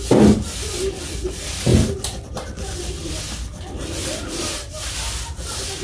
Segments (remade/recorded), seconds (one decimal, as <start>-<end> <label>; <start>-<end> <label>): 0.0-1.7 remade; 1.7-2.3 recorded; 2.3-5.8 remade